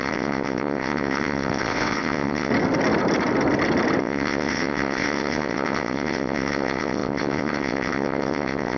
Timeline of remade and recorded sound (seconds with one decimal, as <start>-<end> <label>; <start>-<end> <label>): 0.0-2.5 remade; 2.5-4.0 recorded; 4.0-8.8 remade